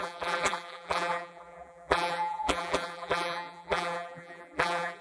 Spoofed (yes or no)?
yes